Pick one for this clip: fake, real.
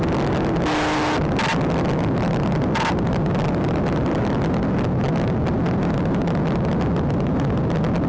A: real